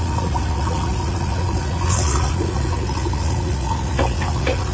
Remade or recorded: remade